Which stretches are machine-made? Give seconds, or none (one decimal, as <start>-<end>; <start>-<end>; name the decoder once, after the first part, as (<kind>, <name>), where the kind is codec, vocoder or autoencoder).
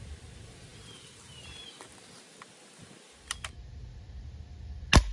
none